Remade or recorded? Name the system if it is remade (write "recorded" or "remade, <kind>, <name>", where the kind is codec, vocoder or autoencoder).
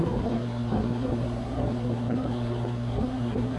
remade, codec, SNAC